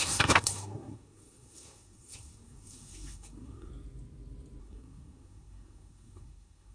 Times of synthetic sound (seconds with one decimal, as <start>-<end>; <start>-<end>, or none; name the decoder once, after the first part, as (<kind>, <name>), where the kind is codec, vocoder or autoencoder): 0.0-3.7 (codec, SNAC); 4.6-6.7